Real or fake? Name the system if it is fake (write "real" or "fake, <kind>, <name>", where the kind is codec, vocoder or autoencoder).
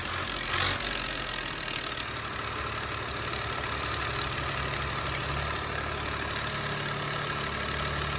real